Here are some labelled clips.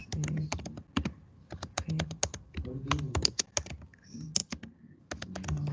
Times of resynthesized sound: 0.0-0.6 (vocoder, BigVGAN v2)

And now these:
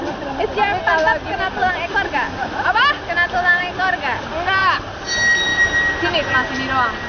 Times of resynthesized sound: 4.6-5.1 (vocoder, BigVGAN v2)

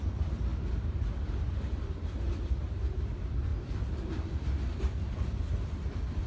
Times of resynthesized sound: 0.5-2.5 (vocoder, BigVGAN v2); 3.5-4.3

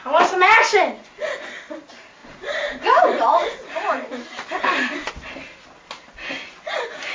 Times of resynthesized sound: 2.2-5.1 (vocoder, BigVGAN v2)

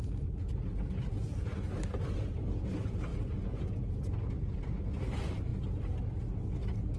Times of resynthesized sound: none

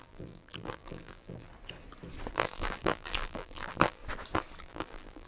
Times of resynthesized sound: 0.0-1.5 (vocoder, BigVGAN v2); 2.3-4.0; 4.6-5.3

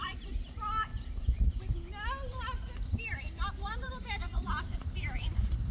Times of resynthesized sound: 0.0-0.9 (vocoder, BigVGAN v2); 3.5-5.7